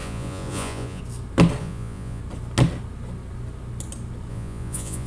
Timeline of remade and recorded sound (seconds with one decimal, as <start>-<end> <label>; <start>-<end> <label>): 0.0-1.0 remade; 1.0-1.6 recorded; 1.6-2.2 remade; 2.2-4.3 recorded; 4.3-5.1 remade